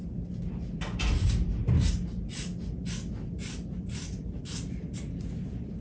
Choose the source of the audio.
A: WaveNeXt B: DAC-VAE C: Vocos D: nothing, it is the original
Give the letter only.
D